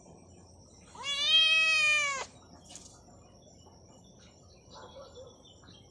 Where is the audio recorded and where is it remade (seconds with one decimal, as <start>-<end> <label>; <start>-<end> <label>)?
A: 0.0-5.9 recorded